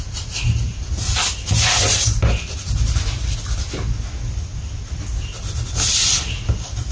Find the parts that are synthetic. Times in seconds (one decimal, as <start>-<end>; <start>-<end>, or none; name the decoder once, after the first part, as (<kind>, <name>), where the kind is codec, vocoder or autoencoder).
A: none